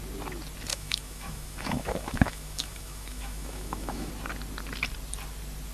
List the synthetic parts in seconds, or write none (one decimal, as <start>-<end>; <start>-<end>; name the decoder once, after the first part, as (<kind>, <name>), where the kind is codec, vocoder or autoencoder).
0.7-4.1 (autoencoder, DAC-VAE)